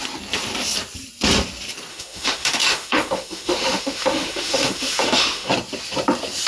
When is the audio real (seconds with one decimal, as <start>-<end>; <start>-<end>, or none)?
0.0-1.9; 5.5-6.5